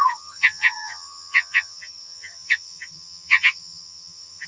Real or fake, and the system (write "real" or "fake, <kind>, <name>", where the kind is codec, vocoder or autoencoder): fake, vocoder, HiFi-GAN